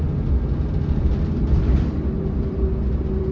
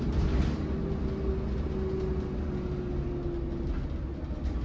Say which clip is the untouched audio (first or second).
second